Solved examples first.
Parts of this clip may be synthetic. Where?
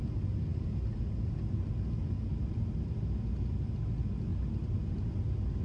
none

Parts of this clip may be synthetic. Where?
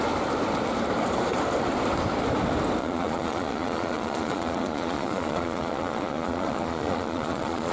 2.8-7.7 (vocoder, Vocos)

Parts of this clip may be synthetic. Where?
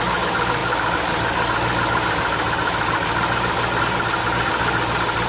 none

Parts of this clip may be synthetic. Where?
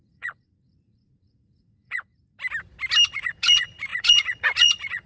0.0-2.1 (vocoder, Vocos); 3.1-5.1